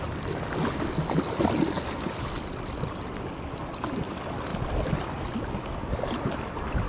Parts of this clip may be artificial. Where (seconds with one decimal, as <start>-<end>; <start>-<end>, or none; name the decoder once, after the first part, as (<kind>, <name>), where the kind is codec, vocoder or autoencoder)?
none